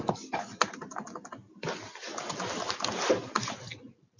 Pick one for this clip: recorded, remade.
recorded